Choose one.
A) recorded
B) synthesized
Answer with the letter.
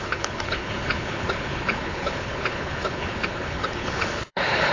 B